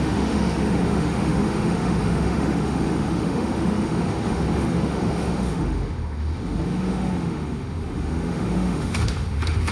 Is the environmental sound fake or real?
fake